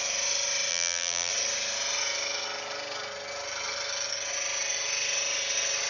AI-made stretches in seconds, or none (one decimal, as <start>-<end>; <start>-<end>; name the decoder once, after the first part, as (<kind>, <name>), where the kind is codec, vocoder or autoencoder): 0.7-1.3 (vocoder, BigVGAN v2)